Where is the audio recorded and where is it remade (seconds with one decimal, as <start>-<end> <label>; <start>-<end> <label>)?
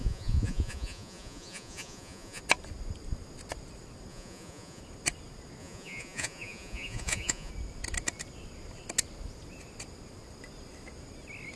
0.0-2.4 remade; 2.4-4.1 recorded; 4.1-4.8 remade; 4.8-5.6 recorded; 5.6-7.5 remade; 7.5-11.6 recorded